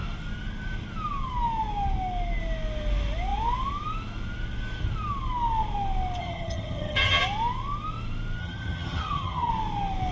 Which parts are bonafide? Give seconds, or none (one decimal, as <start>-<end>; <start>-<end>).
0.0-6.2; 7.2-8.4; 9.5-10.1